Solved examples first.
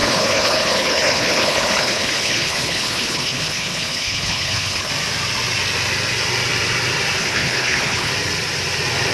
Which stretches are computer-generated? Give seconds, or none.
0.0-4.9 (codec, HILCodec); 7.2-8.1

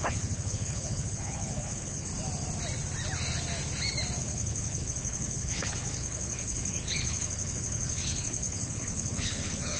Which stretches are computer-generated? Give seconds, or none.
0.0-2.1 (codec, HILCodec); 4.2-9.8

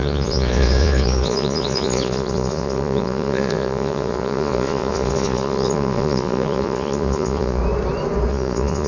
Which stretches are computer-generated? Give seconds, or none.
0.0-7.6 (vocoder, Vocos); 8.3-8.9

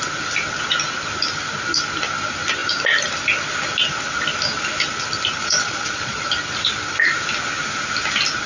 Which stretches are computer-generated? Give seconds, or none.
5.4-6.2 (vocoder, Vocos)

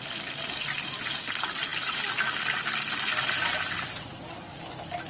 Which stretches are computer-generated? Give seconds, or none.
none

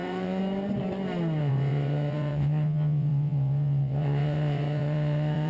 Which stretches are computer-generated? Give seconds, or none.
0.0-0.4 (vocoder, WaveNeXt); 1.4-5.5